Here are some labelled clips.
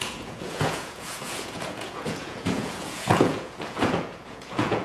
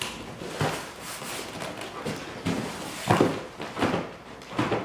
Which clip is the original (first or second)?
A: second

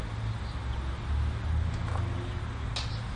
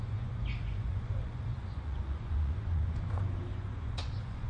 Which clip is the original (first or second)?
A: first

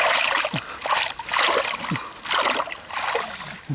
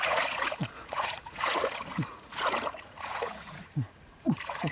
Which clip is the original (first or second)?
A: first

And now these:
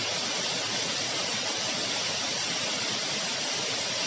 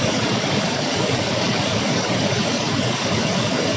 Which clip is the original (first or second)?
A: first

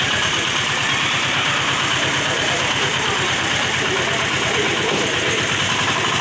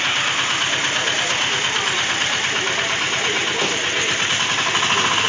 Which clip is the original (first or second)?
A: second